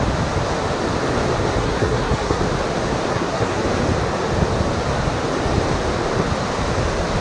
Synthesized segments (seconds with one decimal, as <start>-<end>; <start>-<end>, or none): 1.6-2.4; 3.1-3.6